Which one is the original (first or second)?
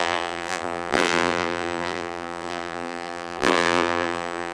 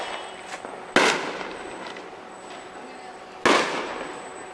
second